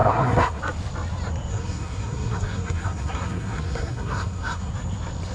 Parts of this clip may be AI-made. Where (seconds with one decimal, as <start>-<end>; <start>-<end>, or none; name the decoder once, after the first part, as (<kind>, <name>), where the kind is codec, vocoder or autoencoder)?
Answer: 0.0-0.6 (codec, SNAC); 1.5-4.7